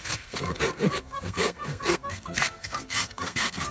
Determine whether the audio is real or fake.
fake